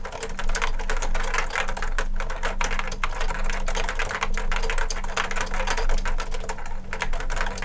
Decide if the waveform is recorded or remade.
recorded